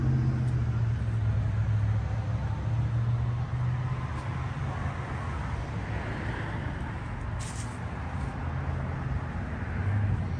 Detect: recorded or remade recorded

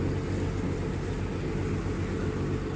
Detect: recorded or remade recorded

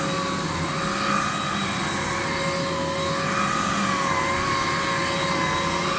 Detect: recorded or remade recorded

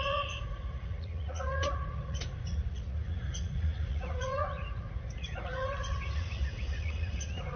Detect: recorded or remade remade